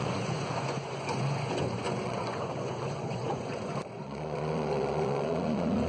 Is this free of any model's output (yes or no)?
no